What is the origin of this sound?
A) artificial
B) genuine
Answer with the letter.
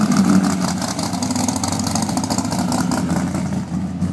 B